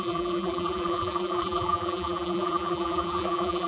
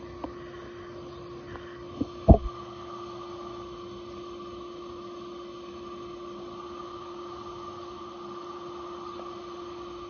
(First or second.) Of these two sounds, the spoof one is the first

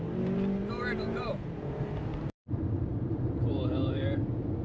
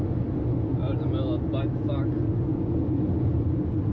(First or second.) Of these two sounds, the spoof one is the first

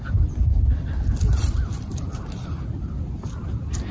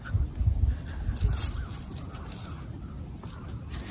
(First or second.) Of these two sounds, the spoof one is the first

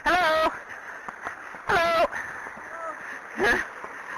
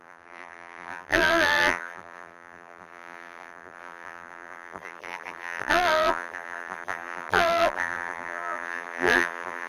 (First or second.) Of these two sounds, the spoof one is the second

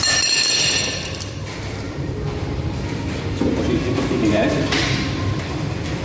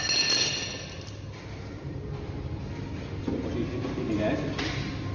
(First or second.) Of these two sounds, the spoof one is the first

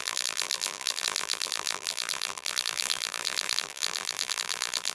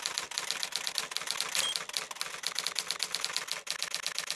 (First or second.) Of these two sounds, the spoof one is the first